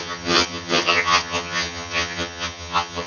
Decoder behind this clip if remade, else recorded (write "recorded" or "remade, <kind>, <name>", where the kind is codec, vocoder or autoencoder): remade, vocoder, HiFi-GAN